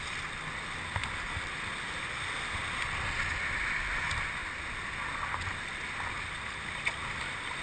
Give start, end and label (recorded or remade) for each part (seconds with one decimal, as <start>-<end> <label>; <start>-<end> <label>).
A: 0.0-7.6 recorded

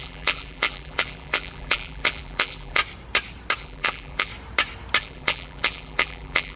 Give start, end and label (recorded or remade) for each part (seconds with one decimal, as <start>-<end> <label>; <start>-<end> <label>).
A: 0.0-2.8 remade; 2.8-3.6 recorded; 3.6-4.3 remade; 4.3-5.0 recorded; 5.0-6.6 remade

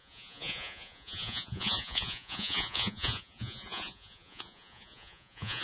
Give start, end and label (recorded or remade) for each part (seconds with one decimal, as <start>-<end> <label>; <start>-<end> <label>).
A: 0.0-5.6 remade

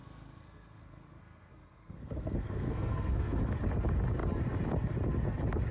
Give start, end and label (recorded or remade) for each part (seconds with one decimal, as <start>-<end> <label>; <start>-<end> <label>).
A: 0.0-3.4 remade; 3.4-5.7 recorded

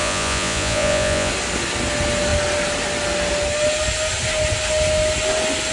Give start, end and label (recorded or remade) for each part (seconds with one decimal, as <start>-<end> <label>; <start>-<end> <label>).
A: 0.0-1.3 remade; 1.3-5.7 recorded

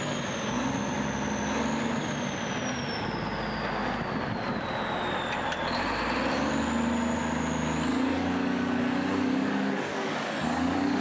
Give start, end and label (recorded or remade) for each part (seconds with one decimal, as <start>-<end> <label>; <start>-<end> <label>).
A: 0.0-7.9 recorded; 7.9-11.0 remade

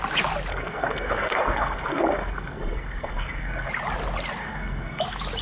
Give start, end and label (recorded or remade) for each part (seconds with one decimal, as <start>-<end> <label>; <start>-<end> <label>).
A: 0.0-0.5 recorded; 0.5-3.7 remade; 3.7-4.4 recorded; 4.4-5.0 remade; 5.0-5.4 recorded